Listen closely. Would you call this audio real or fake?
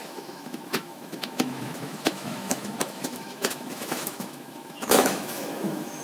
fake